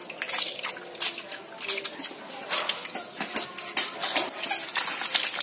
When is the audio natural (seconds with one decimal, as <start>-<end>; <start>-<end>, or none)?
0.0-5.4